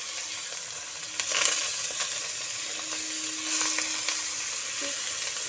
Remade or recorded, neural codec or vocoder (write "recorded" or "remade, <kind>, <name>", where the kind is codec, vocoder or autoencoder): recorded